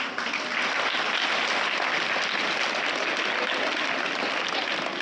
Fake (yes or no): no